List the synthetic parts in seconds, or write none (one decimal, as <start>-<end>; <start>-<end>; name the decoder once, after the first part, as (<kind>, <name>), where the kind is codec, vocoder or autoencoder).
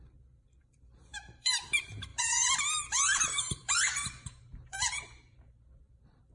0.0-6.3 (vocoder, BigVGAN v2)